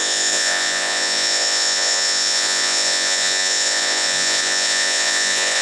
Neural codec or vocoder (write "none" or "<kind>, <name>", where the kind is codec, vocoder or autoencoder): vocoder, Vocos